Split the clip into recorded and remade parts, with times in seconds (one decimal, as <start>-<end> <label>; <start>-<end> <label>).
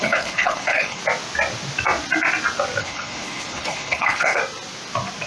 0.0-1.0 remade; 1.0-2.8 recorded; 2.8-4.4 remade; 4.4-5.3 recorded